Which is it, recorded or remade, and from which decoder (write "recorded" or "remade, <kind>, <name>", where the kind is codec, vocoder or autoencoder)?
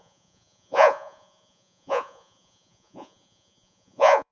remade, vocoder, Vocos